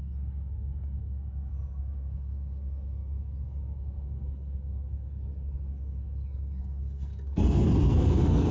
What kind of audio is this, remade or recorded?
remade